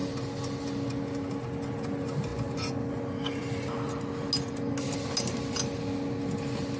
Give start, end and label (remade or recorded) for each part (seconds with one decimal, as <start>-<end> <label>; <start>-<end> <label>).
0.0-6.8 recorded